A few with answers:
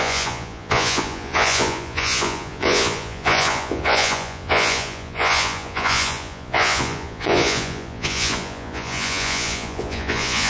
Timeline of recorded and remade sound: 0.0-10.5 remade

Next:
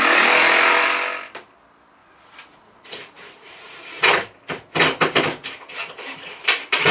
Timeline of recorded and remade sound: 0.0-2.0 recorded; 2.0-4.1 remade; 4.1-6.9 recorded

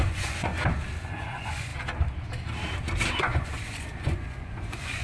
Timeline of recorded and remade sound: 0.0-0.5 remade; 0.5-1.0 recorded; 1.0-1.7 remade; 1.7-3.1 recorded; 3.1-5.0 remade

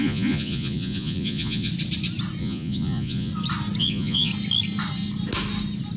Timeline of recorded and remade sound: 0.0-1.7 remade; 1.7-2.4 recorded; 2.4-3.3 remade; 3.3-3.8 recorded; 3.8-4.3 remade; 4.3-6.0 recorded

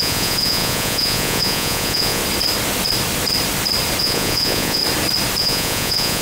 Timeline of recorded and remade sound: 0.0-2.2 remade; 2.2-4.0 recorded; 4.0-4.8 remade; 4.8-5.4 recorded; 5.4-6.2 remade

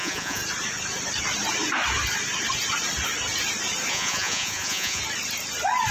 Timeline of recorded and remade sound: 0.0-0.4 remade; 0.4-3.9 recorded; 3.9-5.0 remade; 5.0-5.9 recorded

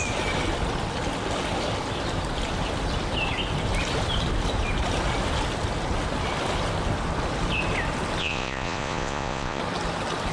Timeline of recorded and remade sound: 0.0-8.2 recorded; 8.2-9.6 remade; 9.6-10.3 recorded